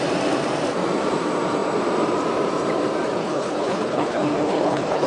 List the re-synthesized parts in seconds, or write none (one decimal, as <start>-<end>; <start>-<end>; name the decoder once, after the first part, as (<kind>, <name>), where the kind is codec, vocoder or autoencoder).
3.2-5.1 (codec, HILCodec)